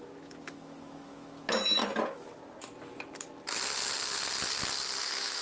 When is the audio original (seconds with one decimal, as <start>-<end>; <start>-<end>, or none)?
1.8-5.0